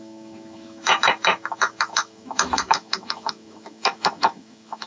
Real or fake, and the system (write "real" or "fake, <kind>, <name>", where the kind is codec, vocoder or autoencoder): fake, autoencoder, DAC-VAE